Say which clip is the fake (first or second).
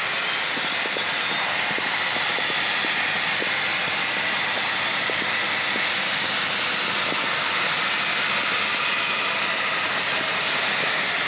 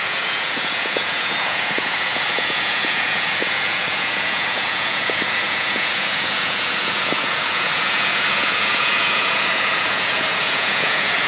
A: second